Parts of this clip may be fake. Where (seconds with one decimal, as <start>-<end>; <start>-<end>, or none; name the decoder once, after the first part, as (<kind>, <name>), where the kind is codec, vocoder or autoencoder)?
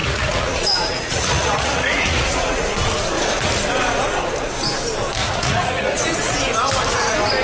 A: 0.0-2.7 (vocoder, Vocos); 5.2-6.2